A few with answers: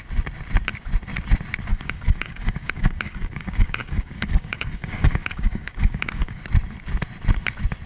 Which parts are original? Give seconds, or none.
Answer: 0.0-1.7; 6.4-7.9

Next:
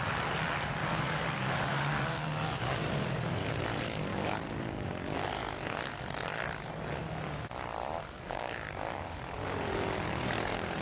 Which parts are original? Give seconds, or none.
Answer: 0.0-0.8; 1.9-3.0; 3.6-4.1; 5.3-8.0